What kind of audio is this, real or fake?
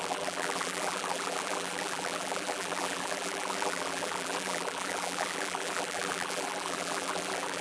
fake